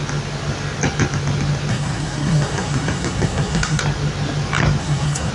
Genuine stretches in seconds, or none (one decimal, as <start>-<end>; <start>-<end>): 0.0-1.7; 3.8-4.8